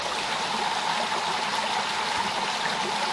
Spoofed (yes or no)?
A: no